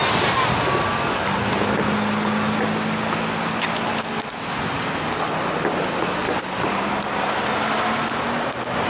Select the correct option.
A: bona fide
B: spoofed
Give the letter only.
A